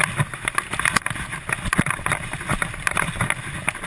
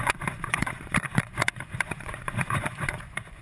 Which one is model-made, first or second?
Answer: second